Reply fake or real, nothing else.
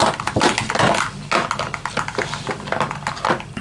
real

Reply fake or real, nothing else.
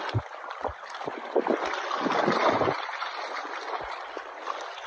real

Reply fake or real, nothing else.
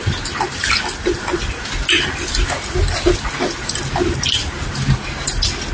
real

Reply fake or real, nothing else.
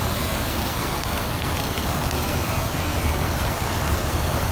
fake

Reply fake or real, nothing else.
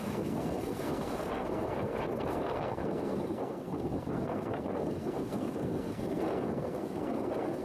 fake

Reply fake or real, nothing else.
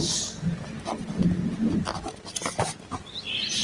real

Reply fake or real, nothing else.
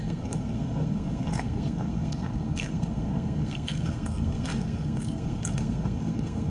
fake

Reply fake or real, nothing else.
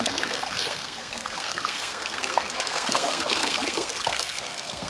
fake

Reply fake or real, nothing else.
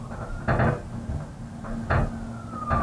real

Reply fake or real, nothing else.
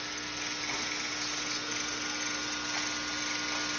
real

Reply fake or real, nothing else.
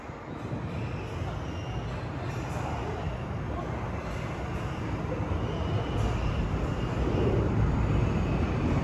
real